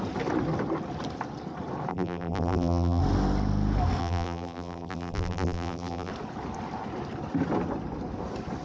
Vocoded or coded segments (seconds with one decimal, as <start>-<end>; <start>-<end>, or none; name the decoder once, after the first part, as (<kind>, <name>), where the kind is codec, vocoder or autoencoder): 1.9-3.0 (vocoder, BigVGAN v2); 4.0-6.1